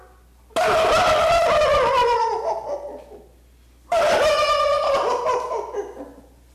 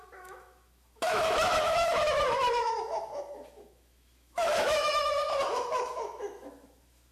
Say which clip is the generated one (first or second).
second